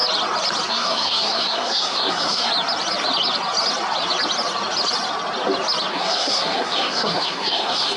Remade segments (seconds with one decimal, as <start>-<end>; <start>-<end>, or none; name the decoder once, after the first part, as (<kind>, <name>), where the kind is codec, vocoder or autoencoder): 0.7-2.5 (codec, SNAC); 5.9-8.0